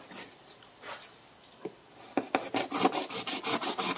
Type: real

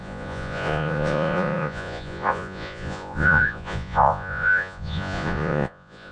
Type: fake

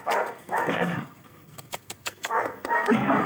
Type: fake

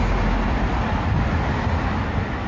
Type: real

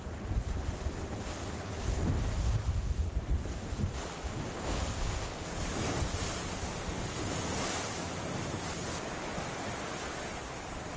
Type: real